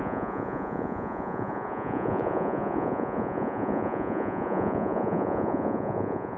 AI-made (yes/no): yes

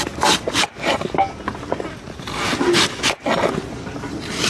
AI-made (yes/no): no